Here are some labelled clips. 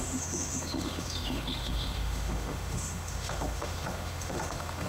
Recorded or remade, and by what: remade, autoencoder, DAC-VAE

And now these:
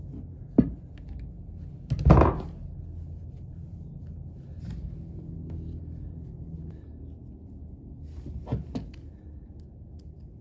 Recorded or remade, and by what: recorded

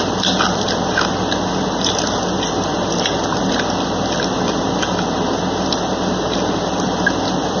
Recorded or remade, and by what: recorded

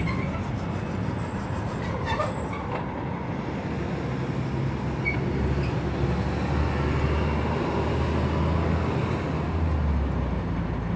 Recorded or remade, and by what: recorded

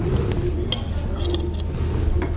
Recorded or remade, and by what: recorded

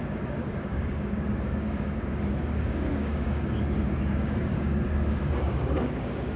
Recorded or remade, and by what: remade, codec, DAC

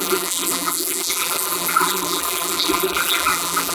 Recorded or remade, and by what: remade, vocoder, BigVGAN v2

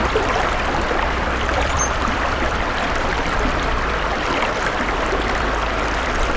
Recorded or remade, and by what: remade, vocoder, BigVGAN v2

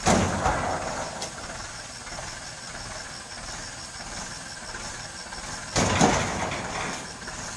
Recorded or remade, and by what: recorded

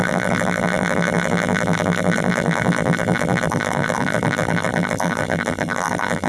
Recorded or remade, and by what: remade, vocoder, BigVGAN v2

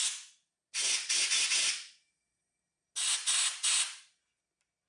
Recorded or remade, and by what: recorded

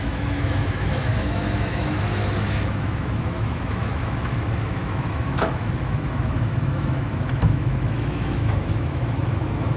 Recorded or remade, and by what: remade, autoencoder, DAC-VAE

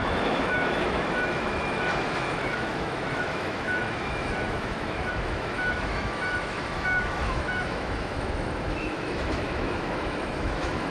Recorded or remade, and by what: remade, autoencoder, DAC-VAE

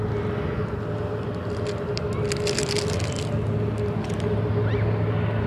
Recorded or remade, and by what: recorded